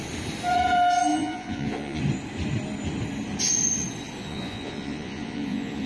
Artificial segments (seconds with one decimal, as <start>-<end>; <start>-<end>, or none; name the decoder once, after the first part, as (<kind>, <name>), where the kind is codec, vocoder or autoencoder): 1.1-2.0 (vocoder, Vocos); 4.2-5.9